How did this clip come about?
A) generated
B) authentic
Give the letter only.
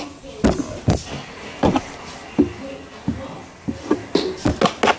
B